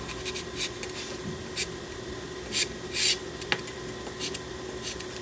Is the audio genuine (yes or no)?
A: yes